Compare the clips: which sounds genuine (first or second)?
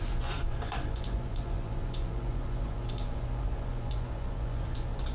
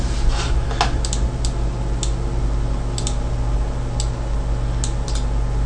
second